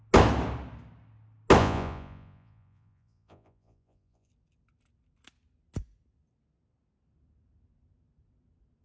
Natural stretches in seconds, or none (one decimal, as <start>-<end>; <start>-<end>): 0.0-1.6; 4.3-8.8